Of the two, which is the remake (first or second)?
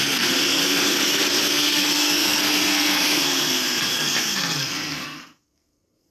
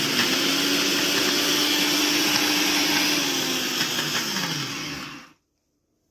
first